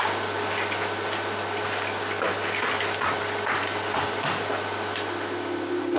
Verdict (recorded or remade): recorded